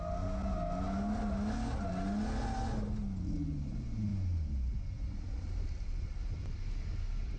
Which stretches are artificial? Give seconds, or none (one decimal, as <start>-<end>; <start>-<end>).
none